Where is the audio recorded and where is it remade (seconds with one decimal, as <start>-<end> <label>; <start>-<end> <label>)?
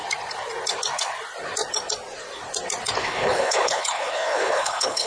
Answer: 0.0-3.0 recorded; 3.0-5.1 remade